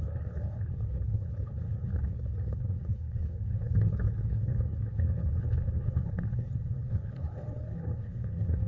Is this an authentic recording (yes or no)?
no